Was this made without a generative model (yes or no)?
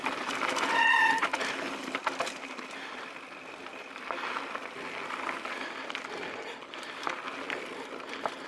yes